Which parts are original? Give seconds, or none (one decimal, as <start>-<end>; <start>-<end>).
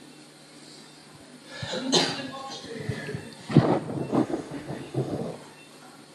0.0-4.1; 5.3-6.1